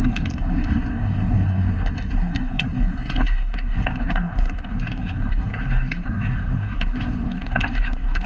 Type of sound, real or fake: fake